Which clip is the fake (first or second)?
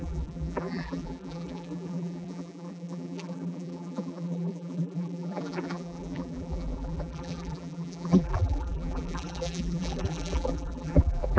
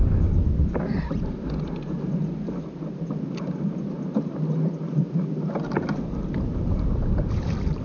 first